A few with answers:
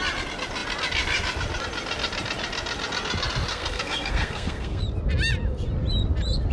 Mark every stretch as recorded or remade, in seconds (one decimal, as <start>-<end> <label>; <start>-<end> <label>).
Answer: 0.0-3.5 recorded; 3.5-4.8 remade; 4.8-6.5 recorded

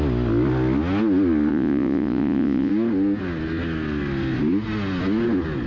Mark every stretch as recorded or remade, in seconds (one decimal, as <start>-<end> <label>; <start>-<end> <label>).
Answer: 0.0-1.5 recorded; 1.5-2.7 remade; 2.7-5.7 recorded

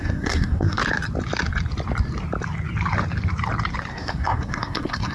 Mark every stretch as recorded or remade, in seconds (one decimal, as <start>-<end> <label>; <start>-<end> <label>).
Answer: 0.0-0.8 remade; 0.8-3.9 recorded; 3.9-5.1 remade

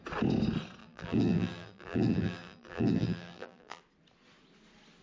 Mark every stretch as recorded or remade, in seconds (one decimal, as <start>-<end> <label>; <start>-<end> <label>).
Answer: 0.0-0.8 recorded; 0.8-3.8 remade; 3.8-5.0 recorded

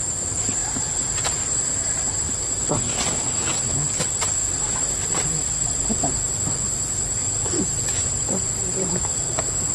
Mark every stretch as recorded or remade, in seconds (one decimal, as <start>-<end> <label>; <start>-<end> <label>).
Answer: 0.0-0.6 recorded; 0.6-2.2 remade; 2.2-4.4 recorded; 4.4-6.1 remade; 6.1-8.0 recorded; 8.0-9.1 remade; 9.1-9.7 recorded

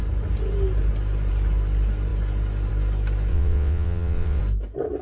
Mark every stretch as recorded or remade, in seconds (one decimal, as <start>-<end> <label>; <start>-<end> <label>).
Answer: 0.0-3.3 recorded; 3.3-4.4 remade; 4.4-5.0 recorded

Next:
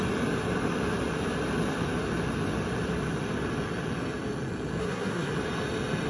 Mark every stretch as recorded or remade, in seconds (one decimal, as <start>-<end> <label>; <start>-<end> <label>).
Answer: 0.0-4.8 recorded; 4.8-5.3 remade; 5.3-6.1 recorded

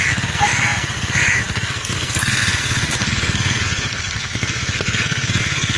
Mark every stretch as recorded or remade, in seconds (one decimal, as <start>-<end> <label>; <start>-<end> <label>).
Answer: 0.0-5.8 remade